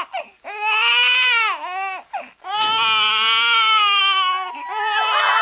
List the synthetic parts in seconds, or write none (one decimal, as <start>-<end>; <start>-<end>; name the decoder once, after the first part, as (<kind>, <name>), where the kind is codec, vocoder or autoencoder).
none